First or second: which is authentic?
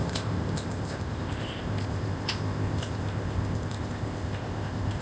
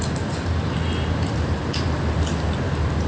second